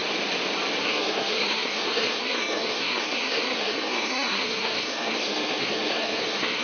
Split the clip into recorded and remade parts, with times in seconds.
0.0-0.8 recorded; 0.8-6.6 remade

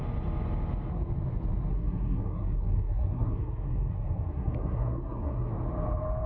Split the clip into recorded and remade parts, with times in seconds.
0.0-1.7 recorded; 1.7-5.5 remade; 5.5-6.3 recorded

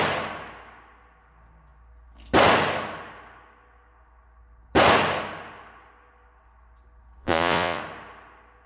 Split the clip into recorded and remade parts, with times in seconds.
0.0-7.2 recorded; 7.2-7.8 remade; 7.8-8.7 recorded

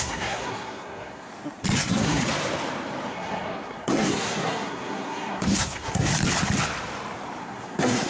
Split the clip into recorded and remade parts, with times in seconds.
0.0-1.3 remade; 1.3-1.8 recorded; 1.8-2.2 remade; 2.2-3.1 recorded; 3.1-6.1 remade; 6.1-7.4 recorded; 7.4-8.1 remade

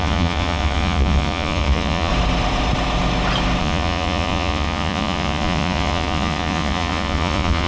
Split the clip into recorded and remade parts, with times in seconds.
0.0-2.1 remade; 2.1-3.6 recorded; 3.6-7.7 remade